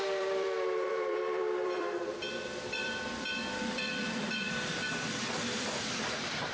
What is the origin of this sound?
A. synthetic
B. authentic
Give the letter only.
A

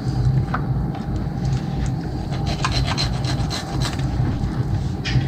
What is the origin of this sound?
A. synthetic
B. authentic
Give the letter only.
B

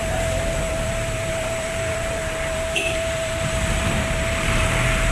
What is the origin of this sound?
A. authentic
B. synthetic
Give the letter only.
B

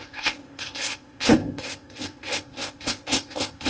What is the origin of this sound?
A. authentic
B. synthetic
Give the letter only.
B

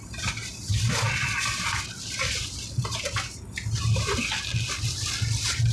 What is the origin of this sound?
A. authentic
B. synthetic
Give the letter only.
A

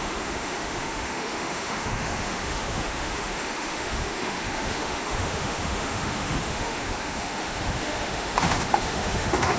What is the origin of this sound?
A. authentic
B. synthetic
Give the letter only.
B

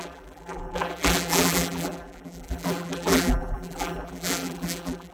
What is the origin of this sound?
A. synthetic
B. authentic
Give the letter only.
A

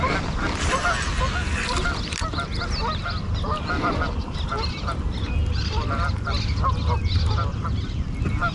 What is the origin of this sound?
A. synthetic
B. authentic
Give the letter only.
B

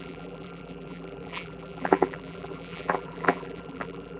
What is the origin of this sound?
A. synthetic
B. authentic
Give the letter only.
A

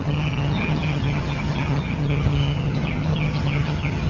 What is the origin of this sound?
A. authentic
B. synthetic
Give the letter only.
B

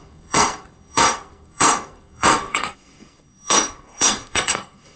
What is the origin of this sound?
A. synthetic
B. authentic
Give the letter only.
A